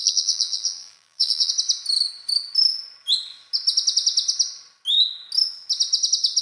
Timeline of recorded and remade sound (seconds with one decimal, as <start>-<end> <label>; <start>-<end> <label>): 0.0-1.5 remade; 1.5-6.4 recorded